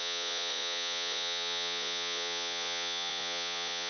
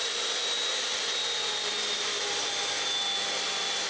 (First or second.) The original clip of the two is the second